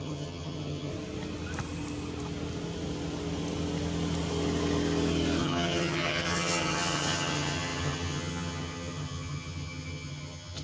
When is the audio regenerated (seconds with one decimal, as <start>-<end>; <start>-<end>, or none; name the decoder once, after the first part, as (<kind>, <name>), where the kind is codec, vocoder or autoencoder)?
0.0-0.9 (vocoder, HiFi-GAN); 5.4-10.6